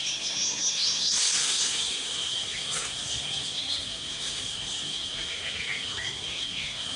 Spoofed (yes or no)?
yes